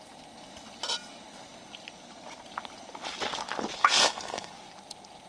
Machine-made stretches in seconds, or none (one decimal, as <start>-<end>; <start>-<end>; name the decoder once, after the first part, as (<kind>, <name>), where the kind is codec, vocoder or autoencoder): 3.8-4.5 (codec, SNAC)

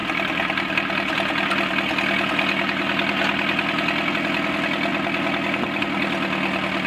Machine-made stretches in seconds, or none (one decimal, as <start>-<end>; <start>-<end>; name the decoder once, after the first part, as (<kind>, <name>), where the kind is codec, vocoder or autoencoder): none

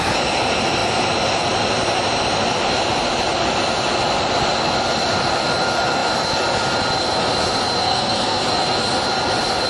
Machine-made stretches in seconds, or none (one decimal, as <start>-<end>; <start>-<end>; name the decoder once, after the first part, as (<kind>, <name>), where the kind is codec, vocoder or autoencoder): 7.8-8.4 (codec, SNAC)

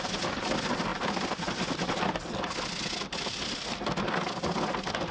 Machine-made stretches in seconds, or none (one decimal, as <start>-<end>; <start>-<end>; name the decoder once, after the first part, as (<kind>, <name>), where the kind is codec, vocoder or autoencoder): none

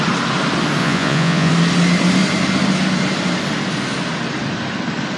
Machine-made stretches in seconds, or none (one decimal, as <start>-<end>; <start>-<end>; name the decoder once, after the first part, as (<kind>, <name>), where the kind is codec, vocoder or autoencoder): 0.8-1.5 (vocoder, Vocos)

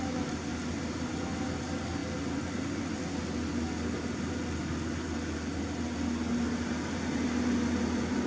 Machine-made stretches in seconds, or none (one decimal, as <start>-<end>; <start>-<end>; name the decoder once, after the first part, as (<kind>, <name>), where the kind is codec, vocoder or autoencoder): none